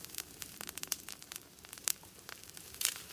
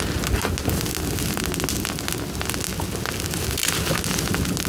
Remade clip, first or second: first